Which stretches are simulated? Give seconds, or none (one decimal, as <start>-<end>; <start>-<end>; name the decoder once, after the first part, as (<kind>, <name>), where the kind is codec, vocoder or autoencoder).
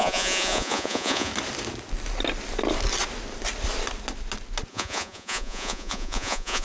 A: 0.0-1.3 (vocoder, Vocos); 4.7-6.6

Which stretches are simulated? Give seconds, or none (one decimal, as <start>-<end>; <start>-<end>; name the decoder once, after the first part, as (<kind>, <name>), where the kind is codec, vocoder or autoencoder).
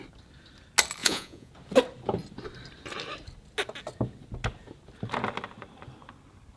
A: 1.0-1.5 (vocoder, Vocos)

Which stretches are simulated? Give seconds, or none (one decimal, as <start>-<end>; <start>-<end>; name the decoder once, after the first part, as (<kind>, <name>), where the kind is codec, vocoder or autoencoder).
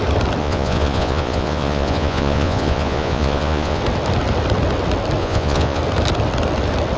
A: 0.4-3.8 (vocoder, Vocos); 5.2-5.8